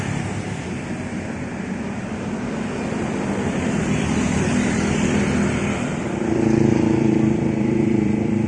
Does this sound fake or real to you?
fake